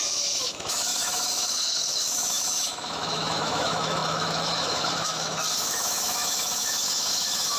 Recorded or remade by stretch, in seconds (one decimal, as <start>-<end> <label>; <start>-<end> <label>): 0.0-7.6 remade